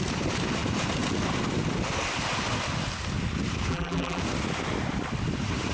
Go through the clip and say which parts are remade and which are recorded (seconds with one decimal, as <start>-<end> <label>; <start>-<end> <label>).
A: 0.0-3.7 recorded; 3.7-4.2 remade; 4.2-5.7 recorded